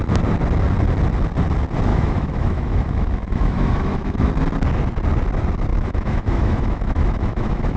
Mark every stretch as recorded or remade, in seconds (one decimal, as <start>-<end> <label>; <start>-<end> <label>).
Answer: 0.0-1.9 recorded; 1.9-4.3 remade; 4.3-5.7 recorded; 5.7-7.8 remade